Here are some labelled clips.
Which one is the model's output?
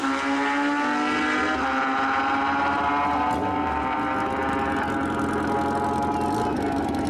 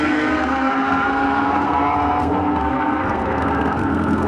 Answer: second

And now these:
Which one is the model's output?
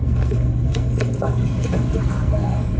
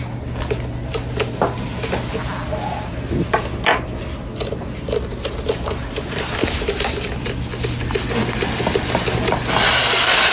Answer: first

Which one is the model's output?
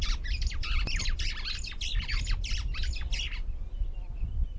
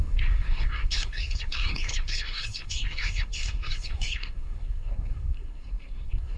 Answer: second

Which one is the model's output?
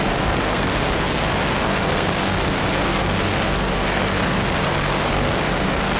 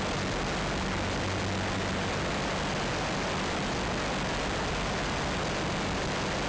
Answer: first